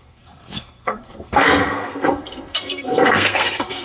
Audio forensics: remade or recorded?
remade